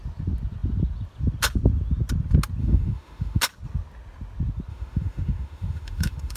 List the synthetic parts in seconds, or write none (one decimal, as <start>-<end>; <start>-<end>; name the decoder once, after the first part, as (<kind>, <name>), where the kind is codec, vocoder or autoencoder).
2.6-3.4 (autoencoder, DAC-VAE); 4.7-6.4